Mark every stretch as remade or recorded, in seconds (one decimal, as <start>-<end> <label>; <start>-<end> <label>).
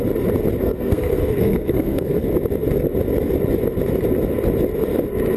0.0-0.6 recorded; 0.6-2.2 remade; 2.2-5.4 recorded